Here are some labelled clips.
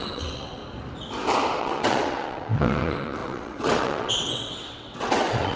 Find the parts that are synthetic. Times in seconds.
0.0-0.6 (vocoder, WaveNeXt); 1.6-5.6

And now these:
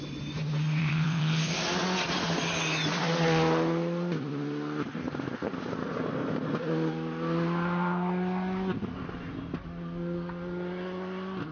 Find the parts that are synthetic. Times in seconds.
0.8-1.5 (vocoder, WaveNeXt)

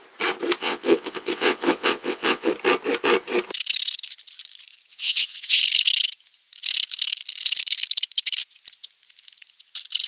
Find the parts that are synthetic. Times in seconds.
0.6-2.5 (vocoder, WaveNeXt); 4.9-5.6

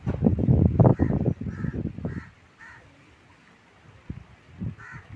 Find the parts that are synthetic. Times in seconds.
none

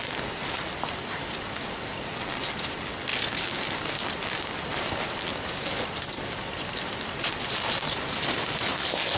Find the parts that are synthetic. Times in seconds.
none

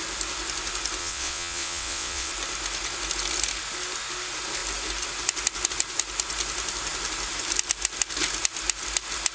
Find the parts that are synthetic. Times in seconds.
1.0-2.3 (vocoder, WaveNeXt)

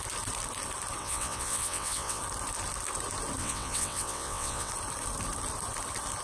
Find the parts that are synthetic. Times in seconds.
1.0-2.2 (vocoder, WaveNeXt); 3.4-4.7

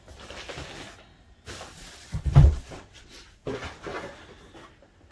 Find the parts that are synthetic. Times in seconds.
1.8-3.2 (vocoder, WaveNeXt)